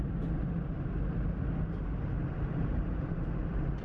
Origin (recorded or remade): recorded